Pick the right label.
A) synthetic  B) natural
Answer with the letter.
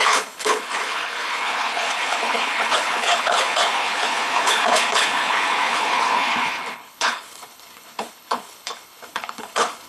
A